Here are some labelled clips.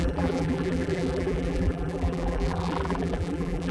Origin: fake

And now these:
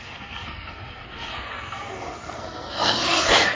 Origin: fake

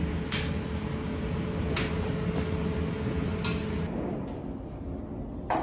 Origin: real